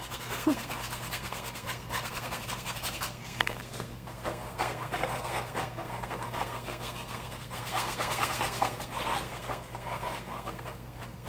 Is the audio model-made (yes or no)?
yes